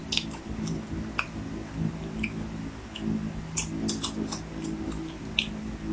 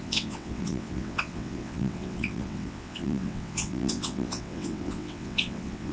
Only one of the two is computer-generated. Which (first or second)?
second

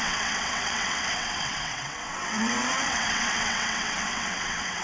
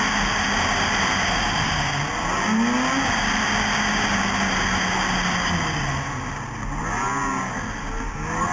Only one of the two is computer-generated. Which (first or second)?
first